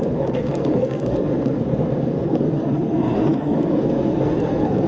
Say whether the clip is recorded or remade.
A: remade